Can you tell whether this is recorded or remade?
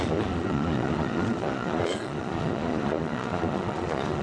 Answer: remade